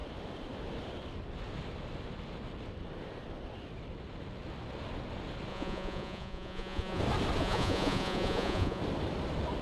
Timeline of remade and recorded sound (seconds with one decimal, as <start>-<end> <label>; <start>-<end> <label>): 0.0-5.5 recorded; 5.5-7.0 remade; 7.0-7.4 recorded; 7.4-8.8 remade; 8.8-9.6 recorded